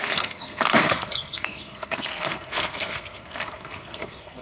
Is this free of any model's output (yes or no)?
no